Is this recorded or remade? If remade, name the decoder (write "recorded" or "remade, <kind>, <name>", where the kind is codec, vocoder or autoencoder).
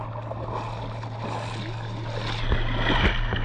recorded